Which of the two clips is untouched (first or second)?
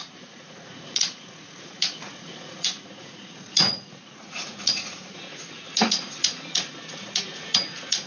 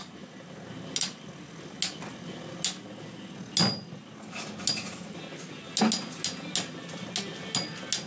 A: second